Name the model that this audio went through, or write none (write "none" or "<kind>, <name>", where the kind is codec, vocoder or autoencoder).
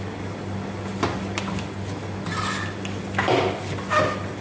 none